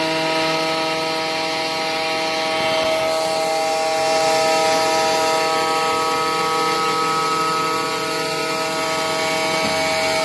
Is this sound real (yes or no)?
yes